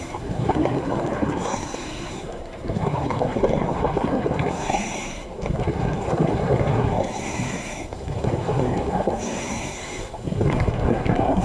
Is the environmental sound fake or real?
fake